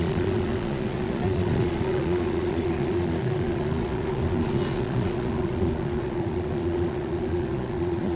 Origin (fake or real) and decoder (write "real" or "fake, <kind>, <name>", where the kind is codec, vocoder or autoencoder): fake, vocoder, Vocos